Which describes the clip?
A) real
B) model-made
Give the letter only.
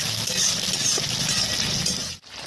A